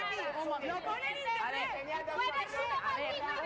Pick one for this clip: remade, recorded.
recorded